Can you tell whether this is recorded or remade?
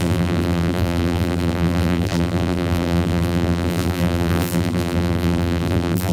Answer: remade